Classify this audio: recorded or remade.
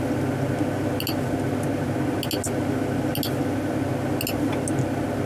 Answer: recorded